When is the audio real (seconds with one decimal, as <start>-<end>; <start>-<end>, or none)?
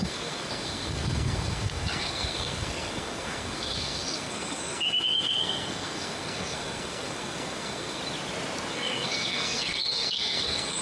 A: 8.0-8.7